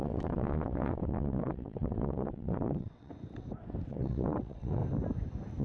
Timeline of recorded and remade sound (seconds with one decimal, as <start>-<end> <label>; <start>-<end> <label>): 0.0-3.1 remade; 3.1-3.9 recorded; 3.9-4.8 remade; 4.8-5.6 recorded